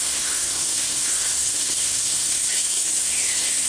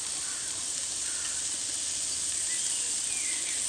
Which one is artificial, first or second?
first